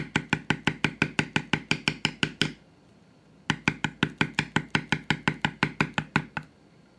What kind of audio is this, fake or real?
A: real